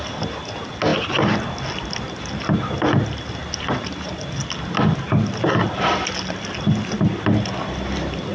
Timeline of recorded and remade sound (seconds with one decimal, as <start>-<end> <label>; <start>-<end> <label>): 0.0-8.3 recorded